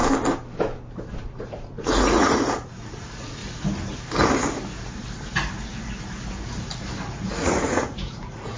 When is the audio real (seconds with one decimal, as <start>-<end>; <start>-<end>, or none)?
0.0-1.2; 3.4-7.0